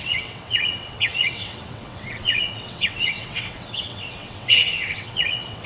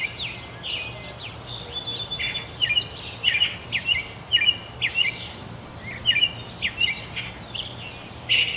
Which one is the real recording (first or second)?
second